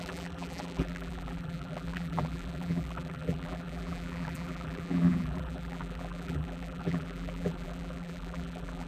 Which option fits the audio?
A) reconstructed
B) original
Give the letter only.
A